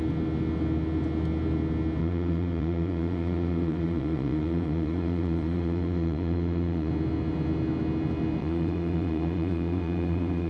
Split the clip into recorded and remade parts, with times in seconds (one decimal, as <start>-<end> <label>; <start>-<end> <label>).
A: 0.0-2.0 recorded; 2.0-6.9 remade; 6.9-8.4 recorded; 8.4-10.5 remade